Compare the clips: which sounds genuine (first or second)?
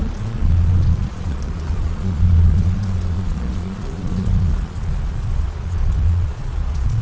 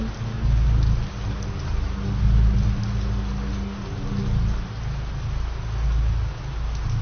second